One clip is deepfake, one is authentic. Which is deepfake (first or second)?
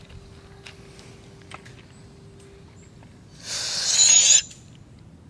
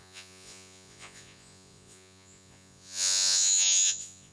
second